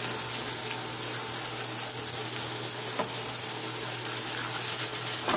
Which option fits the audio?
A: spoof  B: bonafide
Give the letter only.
B